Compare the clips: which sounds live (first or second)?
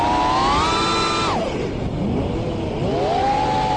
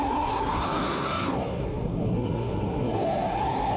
first